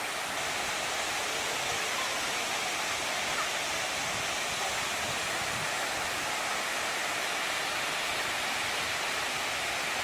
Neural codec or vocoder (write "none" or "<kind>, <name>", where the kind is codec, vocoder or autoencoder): none